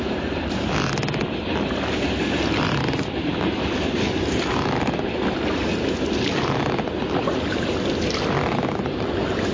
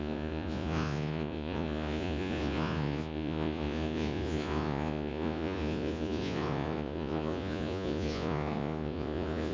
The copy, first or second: second